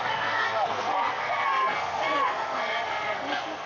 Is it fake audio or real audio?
fake